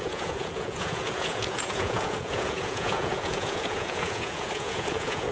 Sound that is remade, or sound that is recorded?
remade